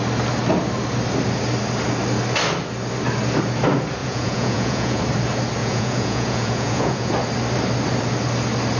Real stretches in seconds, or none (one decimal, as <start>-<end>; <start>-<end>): 0.0-4.0; 5.0-5.6; 7.1-8.8